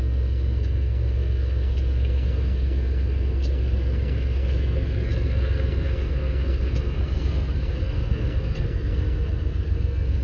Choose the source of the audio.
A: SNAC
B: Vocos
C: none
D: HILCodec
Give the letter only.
A